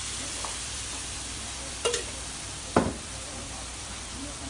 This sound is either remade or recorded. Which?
remade